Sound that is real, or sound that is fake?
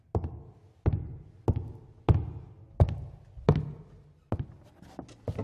real